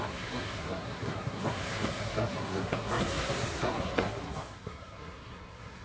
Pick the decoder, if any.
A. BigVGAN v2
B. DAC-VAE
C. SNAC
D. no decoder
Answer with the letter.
C